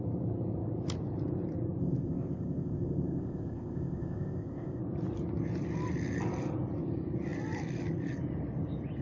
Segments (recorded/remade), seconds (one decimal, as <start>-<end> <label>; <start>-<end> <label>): 0.0-1.8 recorded; 1.8-4.8 remade; 4.8-9.0 recorded